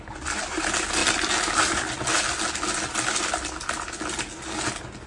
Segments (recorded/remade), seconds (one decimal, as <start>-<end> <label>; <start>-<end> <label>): 0.0-5.1 recorded